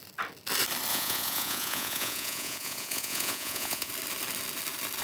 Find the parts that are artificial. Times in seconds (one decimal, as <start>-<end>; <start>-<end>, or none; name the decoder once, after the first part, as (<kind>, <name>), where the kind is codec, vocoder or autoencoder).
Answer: 0.9-3.9 (vocoder, Vocos)